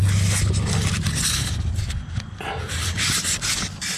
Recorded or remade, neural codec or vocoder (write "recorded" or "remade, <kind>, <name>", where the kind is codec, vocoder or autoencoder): recorded